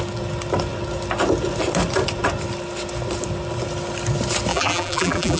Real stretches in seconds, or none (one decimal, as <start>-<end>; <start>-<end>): 0.0-4.5